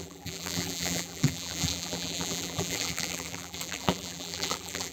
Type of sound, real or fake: fake